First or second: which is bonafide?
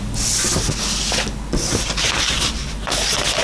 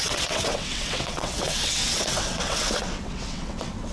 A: first